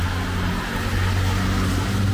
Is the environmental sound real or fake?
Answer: real